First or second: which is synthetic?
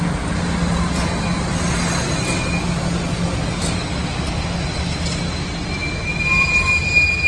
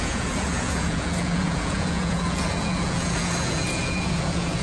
second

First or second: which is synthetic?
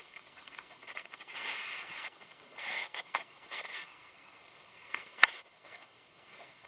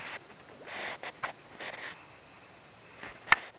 first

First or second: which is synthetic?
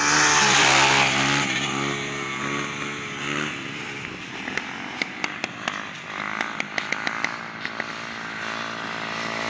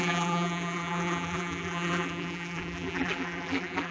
second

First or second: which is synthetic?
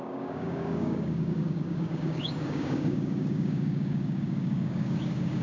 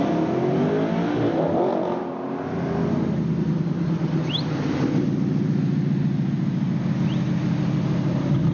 first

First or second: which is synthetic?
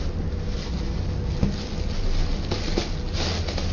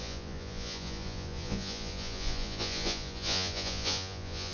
second